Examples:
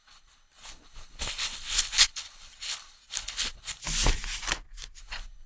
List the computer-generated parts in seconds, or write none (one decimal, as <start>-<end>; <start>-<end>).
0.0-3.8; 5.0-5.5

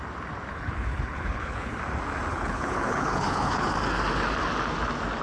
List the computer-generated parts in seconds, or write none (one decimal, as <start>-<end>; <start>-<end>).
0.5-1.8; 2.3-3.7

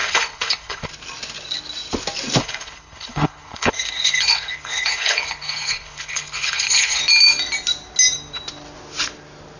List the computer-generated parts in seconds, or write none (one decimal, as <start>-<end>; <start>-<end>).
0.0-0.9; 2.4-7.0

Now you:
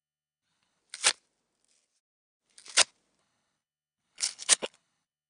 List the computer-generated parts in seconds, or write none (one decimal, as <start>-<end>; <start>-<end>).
0.0-0.8; 3.2-5.3